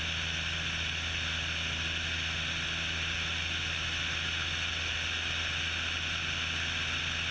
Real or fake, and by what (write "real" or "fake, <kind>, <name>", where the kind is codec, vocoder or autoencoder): real